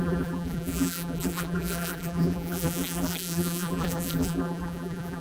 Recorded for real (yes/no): no